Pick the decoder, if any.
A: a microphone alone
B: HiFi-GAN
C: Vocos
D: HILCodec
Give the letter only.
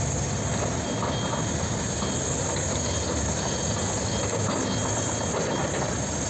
A